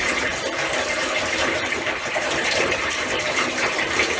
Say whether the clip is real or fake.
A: fake